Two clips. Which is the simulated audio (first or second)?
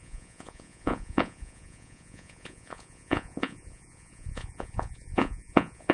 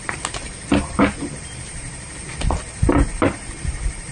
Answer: first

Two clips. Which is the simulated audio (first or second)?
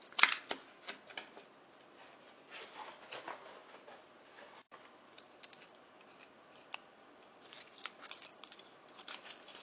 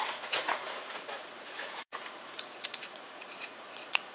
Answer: second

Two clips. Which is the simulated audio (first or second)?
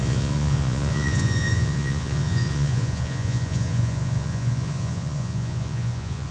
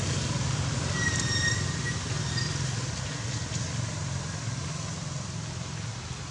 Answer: first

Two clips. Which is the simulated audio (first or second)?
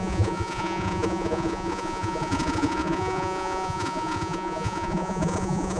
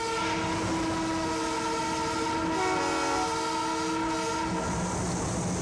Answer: first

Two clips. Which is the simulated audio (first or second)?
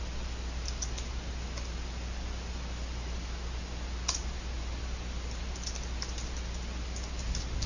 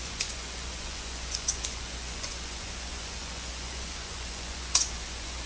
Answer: second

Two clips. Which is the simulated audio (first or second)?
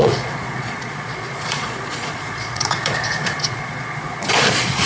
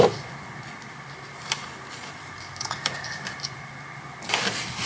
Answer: first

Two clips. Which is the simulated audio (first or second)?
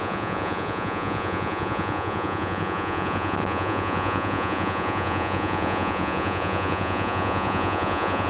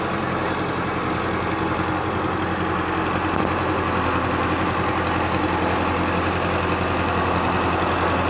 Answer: first